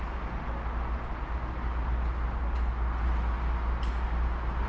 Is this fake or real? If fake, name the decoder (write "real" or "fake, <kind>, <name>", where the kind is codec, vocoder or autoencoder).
real